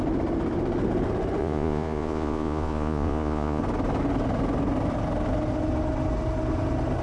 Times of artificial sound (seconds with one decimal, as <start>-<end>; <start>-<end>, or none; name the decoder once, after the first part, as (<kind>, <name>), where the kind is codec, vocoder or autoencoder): 1.4-3.6 (vocoder, Vocos)